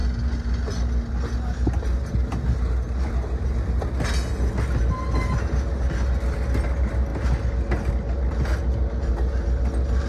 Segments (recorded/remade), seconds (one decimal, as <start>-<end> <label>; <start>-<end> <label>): 0.0-10.1 recorded